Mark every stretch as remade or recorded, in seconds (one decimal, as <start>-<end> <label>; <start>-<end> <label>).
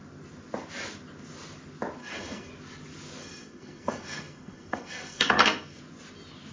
0.0-2.0 recorded; 2.0-2.5 remade; 2.5-3.2 recorded; 3.2-5.8 remade; 5.8-6.5 recorded